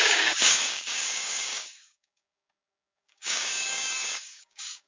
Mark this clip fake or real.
fake